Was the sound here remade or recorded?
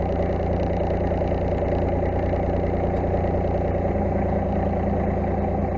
recorded